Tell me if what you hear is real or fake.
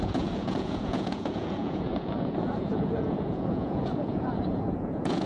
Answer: fake